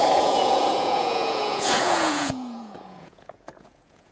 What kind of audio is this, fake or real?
fake